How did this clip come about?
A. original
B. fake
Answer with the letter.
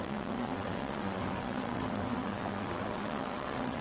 B